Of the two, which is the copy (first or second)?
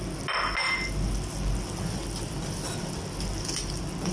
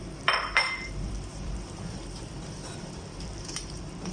second